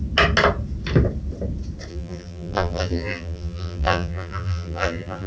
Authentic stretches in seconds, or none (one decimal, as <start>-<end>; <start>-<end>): 0.0-1.9